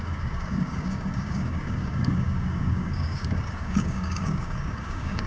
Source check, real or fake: fake